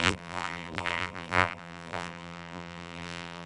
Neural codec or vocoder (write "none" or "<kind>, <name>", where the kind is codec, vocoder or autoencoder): vocoder, BigVGAN v2